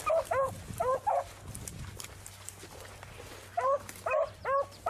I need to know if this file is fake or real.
real